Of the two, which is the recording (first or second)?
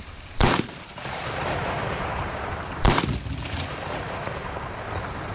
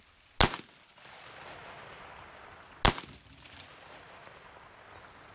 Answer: second